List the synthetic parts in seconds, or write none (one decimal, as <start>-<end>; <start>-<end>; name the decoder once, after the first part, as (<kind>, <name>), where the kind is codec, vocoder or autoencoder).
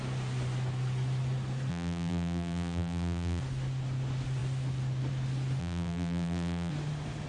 1.7-3.4 (vocoder, BigVGAN v2); 5.6-6.7